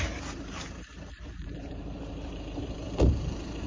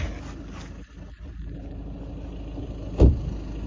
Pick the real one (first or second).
second